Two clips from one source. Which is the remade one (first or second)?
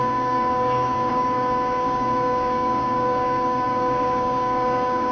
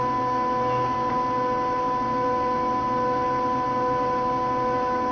first